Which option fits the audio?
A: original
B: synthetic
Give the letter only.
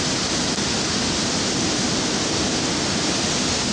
A